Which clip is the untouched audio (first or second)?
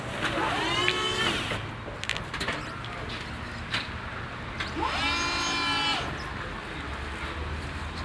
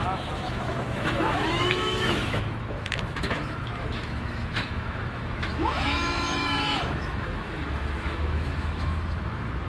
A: first